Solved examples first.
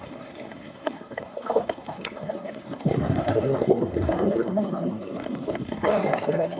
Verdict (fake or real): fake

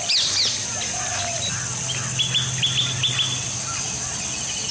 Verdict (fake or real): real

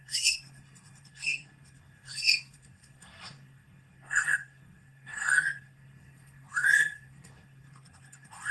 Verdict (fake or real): fake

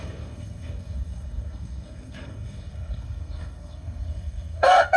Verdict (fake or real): fake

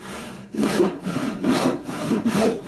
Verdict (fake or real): fake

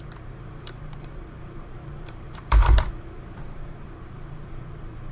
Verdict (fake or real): fake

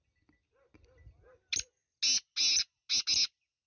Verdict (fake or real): real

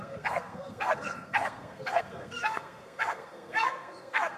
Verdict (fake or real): fake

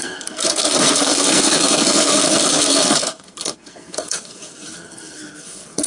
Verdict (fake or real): fake